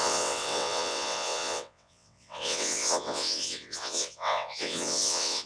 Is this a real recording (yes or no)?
no